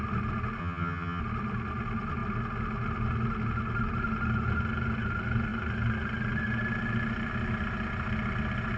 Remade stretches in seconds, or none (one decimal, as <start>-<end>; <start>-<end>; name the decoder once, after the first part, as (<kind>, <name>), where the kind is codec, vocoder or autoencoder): 0.6-1.2 (vocoder, HiFi-GAN)